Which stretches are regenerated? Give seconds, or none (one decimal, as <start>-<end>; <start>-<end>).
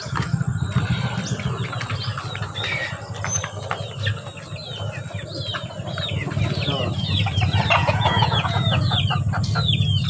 7.8-8.8